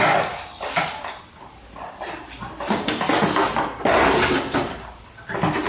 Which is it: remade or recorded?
recorded